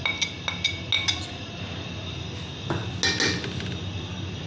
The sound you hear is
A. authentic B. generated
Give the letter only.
A